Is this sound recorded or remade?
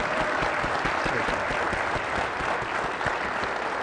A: recorded